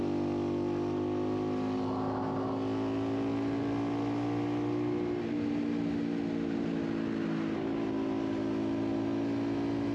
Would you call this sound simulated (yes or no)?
no